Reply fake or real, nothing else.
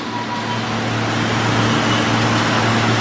real